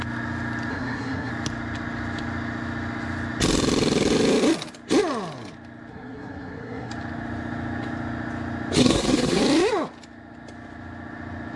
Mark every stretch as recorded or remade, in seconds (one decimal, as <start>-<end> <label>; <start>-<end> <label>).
0.0-0.7 recorded; 0.7-1.3 remade; 1.3-5.9 recorded; 5.9-6.9 remade; 6.9-8.8 recorded; 8.8-9.4 remade; 9.4-11.6 recorded